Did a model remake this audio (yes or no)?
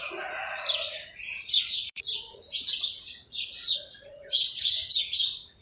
yes